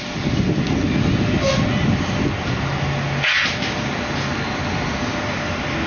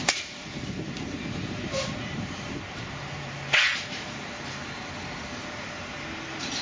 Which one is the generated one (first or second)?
second